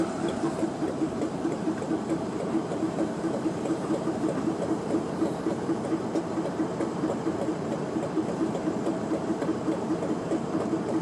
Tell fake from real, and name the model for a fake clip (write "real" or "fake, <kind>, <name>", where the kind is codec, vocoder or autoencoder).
fake, vocoder, BigVGAN v2